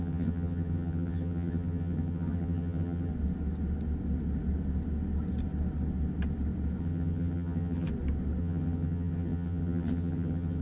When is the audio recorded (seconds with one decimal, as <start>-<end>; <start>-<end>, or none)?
3.1-6.8; 7.9-8.4